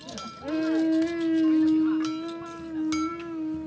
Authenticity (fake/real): real